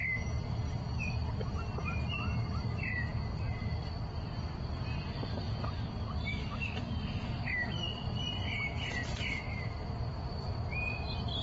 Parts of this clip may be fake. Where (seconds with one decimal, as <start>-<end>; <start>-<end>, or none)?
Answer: 6.3-7.7